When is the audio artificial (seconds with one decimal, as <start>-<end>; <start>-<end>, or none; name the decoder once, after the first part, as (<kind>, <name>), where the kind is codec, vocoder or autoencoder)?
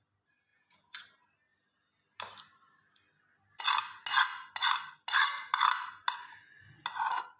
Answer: 0.5-1.0 (vocoder, Vocos)